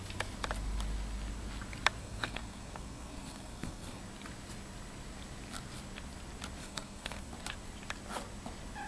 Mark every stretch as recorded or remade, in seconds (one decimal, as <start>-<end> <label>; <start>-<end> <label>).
0.0-2.0 recorded; 2.0-4.0 remade; 4.0-6.6 recorded; 6.6-7.3 remade; 7.3-8.9 recorded